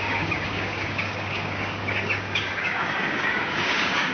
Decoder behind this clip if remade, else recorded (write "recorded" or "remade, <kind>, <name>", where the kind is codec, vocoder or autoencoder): remade, codec, DAC